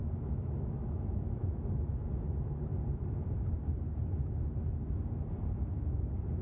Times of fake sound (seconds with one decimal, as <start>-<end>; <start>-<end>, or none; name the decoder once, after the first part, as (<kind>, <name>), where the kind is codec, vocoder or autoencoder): 0.0-1.9 (autoencoder, DAC-VAE)

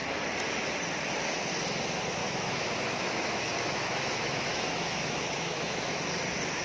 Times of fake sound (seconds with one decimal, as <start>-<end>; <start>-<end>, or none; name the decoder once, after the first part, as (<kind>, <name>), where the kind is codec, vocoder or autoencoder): 2.2-6.0 (autoencoder, DAC-VAE)

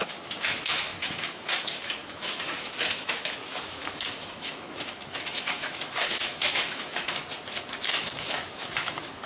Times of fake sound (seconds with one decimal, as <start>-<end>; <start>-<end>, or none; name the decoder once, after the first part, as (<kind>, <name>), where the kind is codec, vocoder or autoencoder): 0.0-7.2 (autoencoder, DAC-VAE); 7.9-9.3

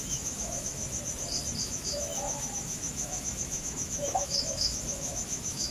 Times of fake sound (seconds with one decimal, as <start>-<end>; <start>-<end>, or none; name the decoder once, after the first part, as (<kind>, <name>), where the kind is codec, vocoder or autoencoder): 0.0-0.8 (autoencoder, DAC-VAE); 1.6-5.7

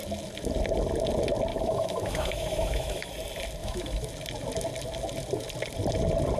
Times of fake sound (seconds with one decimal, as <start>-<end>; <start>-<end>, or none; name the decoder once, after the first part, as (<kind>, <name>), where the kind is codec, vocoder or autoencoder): 1.5-3.1 (autoencoder, DAC-VAE); 3.6-4.1

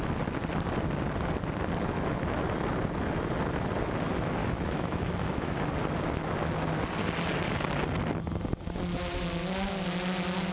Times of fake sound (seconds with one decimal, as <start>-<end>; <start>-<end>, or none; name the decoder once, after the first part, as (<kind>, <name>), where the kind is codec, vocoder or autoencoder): 4.4-5.6 (autoencoder, DAC-VAE)